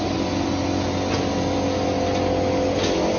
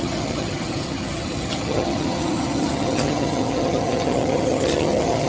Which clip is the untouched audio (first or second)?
first